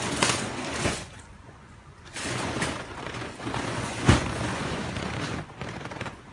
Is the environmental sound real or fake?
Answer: fake